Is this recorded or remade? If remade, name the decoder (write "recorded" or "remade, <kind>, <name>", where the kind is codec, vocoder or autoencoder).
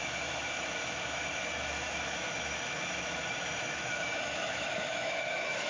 remade, autoencoder, DAC-VAE